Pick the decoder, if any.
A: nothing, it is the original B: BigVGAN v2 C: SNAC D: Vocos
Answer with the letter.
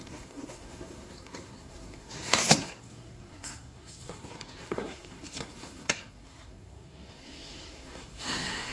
C